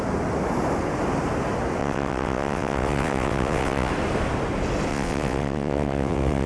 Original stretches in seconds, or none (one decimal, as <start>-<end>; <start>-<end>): 0.0-1.8; 3.9-4.9